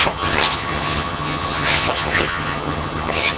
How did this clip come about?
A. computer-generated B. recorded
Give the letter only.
A